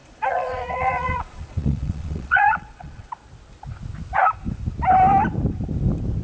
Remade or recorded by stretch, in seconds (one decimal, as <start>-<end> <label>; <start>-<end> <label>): 0.0-3.1 remade; 3.1-6.2 recorded